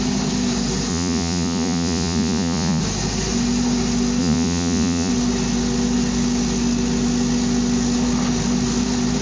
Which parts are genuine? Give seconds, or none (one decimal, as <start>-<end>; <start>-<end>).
0.0-0.9; 2.8-4.2; 5.1-9.2